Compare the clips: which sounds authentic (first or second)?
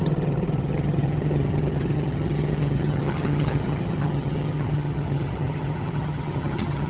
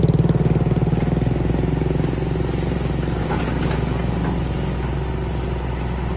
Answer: second